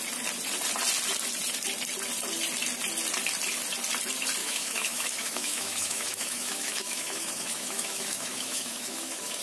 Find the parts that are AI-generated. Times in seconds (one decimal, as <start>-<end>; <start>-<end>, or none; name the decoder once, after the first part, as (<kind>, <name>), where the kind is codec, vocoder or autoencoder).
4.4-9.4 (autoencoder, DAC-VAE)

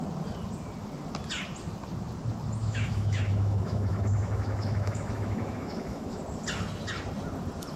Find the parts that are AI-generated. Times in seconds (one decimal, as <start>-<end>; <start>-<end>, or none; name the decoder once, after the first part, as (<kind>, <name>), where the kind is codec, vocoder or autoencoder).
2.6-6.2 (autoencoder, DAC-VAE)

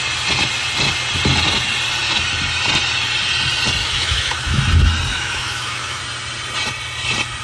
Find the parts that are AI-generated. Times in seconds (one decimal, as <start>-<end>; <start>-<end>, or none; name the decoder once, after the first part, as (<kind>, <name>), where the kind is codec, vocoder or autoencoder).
3.8-4.6 (autoencoder, DAC-VAE); 5.1-6.0

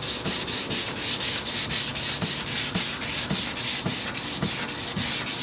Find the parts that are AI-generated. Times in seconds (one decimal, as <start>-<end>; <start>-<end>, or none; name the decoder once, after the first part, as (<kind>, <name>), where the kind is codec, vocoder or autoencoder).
none